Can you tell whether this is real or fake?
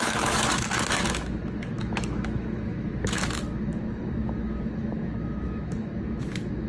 fake